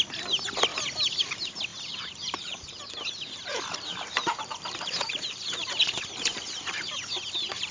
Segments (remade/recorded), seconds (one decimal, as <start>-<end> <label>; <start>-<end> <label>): 0.0-1.7 recorded; 1.7-2.8 remade; 2.8-3.9 recorded; 3.9-6.9 remade; 6.9-7.7 recorded